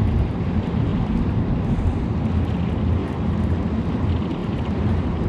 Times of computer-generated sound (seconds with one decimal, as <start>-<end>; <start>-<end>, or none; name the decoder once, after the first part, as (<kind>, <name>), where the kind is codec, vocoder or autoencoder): 4.4-5.3 (vocoder, BigVGAN v2)